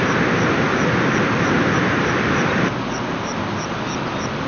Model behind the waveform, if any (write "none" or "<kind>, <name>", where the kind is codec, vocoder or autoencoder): none